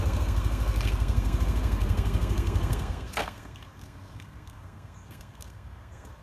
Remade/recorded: remade